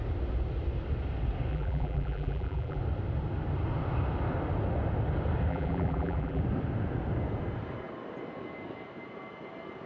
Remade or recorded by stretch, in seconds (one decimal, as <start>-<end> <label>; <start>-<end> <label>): 0.0-1.5 recorded; 1.5-2.8 remade; 2.8-5.5 recorded; 5.5-6.4 remade; 6.4-9.9 recorded